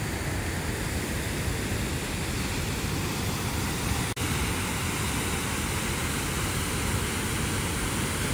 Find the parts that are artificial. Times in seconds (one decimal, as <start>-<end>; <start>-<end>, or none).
none